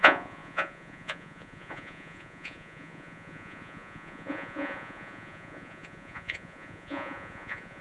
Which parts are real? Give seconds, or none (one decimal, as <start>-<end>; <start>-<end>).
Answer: none